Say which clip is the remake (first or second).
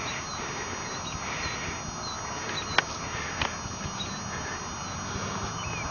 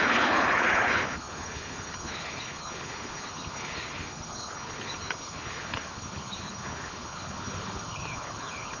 second